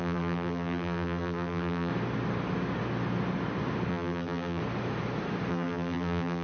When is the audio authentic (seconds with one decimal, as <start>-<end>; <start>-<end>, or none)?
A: 1.9-3.9; 4.6-5.5